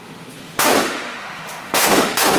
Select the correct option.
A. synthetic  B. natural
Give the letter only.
A